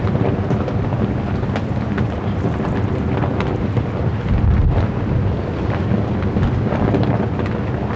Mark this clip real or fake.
real